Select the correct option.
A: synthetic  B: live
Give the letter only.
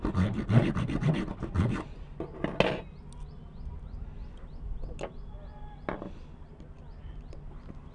B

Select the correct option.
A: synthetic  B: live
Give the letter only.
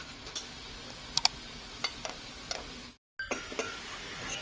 B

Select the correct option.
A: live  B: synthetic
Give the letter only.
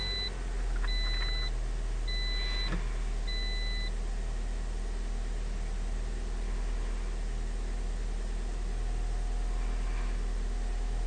A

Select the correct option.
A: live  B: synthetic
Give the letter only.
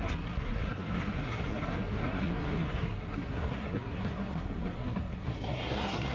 B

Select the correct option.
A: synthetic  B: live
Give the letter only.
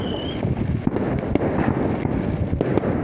B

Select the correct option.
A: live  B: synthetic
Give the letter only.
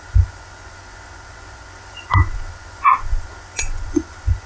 B